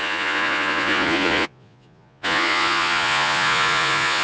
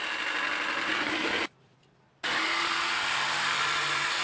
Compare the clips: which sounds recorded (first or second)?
second